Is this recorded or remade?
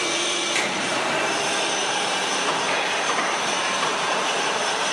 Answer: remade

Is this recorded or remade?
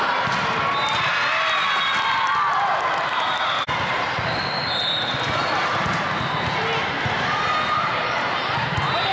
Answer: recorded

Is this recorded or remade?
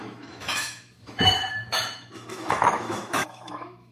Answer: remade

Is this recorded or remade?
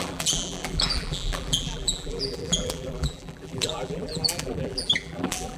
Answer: remade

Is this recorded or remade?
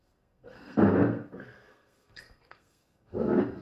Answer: remade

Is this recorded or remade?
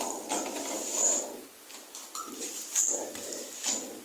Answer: recorded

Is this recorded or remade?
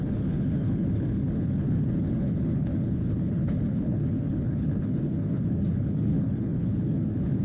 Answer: remade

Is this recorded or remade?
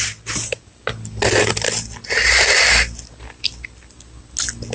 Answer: recorded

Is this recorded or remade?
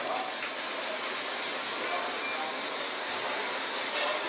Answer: recorded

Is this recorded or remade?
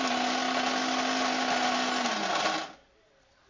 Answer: recorded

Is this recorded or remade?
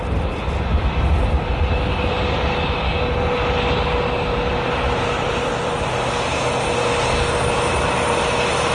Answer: recorded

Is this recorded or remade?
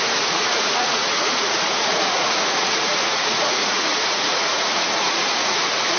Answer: remade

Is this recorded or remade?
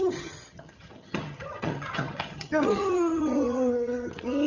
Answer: remade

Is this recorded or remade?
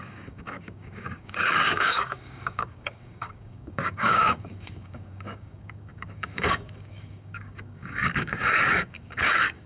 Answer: remade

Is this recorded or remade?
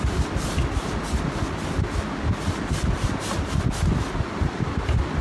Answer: recorded